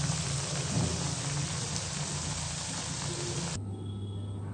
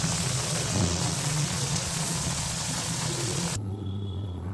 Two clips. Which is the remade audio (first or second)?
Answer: second